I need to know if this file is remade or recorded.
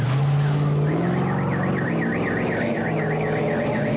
recorded